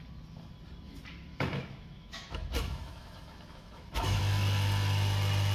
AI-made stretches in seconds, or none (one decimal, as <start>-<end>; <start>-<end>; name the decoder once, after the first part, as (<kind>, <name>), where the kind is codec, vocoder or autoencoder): 1.3-4.2 (autoencoder, DAC-VAE)